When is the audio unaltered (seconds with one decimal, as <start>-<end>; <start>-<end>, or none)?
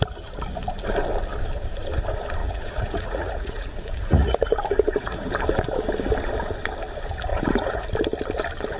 0.0-2.4; 5.3-7.3; 7.8-8.8